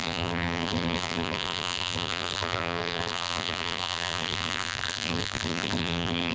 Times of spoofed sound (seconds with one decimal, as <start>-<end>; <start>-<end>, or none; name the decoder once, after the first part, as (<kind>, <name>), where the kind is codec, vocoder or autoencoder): 0.0-6.3 (vocoder, BigVGAN v2)